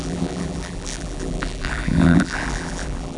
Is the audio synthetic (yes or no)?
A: yes